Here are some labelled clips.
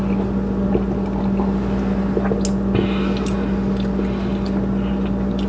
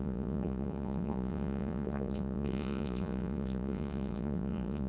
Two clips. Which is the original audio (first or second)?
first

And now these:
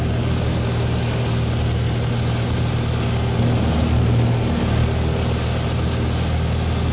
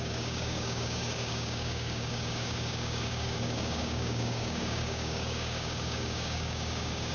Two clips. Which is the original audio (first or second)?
first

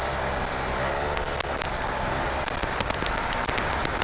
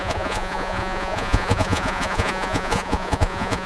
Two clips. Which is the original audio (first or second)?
first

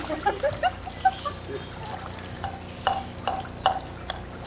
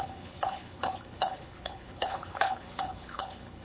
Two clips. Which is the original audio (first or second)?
first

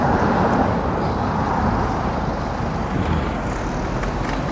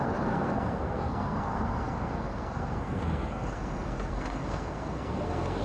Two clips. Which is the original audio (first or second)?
first